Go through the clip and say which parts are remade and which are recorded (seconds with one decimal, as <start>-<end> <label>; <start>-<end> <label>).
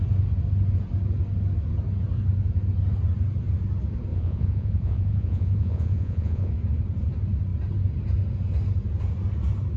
0.0-4.1 recorded; 4.1-6.5 remade; 6.5-9.8 recorded